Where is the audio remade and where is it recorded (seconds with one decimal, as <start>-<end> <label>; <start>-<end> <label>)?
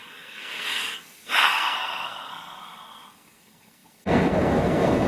0.0-5.1 remade